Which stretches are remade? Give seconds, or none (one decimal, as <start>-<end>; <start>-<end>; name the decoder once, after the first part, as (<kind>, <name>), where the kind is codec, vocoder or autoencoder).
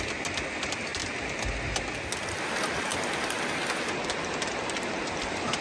0.9-1.4 (vocoder, BigVGAN v2)